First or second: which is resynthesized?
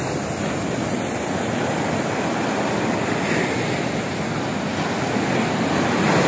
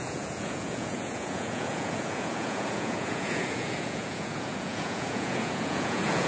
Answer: second